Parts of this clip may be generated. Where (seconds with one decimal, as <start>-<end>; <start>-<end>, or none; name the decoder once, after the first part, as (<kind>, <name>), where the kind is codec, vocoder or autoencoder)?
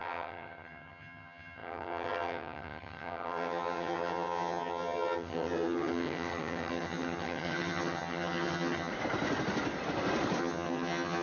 0.0-8.9 (vocoder, HiFi-GAN); 10.4-11.2